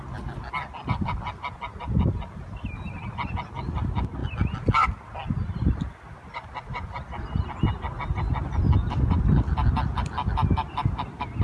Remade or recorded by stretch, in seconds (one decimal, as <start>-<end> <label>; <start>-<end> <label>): 0.0-11.4 recorded